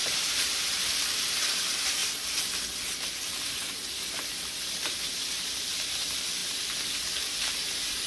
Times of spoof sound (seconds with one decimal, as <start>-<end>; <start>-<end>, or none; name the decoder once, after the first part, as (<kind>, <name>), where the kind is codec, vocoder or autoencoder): 0.0-2.0 (vocoder, BigVGAN v2); 3.6-6.4; 7.4-8.1